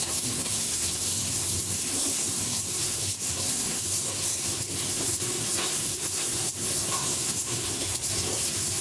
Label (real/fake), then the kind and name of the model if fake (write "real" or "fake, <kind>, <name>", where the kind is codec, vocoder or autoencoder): fake, codec, SNAC